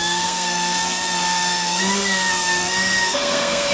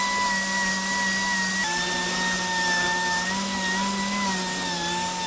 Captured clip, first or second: second